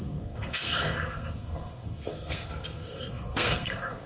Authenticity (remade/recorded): remade